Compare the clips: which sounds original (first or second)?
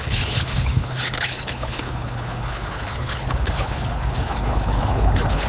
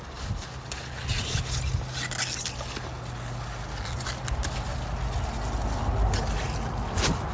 second